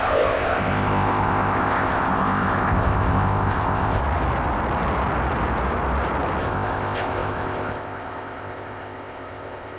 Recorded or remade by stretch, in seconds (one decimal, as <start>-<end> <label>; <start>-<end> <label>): 0.0-4.0 remade; 4.0-6.4 recorded; 6.4-9.8 remade